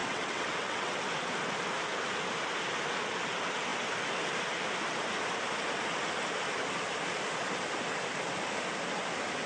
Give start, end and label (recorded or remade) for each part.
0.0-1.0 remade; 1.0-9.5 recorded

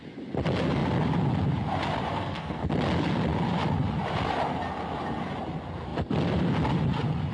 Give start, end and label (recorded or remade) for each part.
0.0-2.1 recorded; 2.1-2.7 remade; 2.7-7.3 recorded

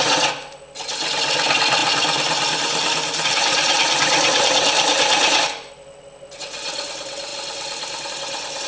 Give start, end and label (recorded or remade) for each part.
0.0-1.8 recorded; 1.8-5.7 remade; 5.7-8.7 recorded

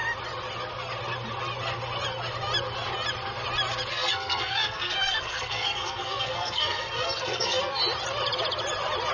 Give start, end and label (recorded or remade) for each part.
0.0-3.9 recorded; 3.9-7.8 remade; 7.8-9.1 recorded